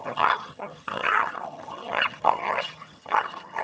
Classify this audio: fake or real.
fake